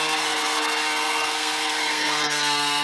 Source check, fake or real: fake